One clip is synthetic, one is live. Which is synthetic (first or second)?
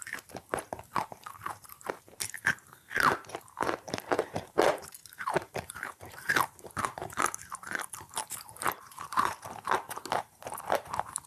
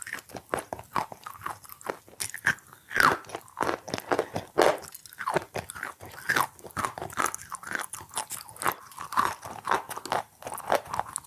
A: first